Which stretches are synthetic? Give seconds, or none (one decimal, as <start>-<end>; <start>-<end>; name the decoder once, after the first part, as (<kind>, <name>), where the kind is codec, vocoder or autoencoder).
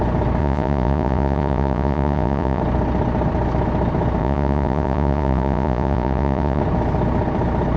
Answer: 0.4-2.6 (vocoder, Vocos); 4.2-6.6